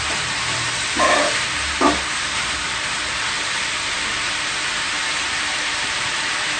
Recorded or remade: remade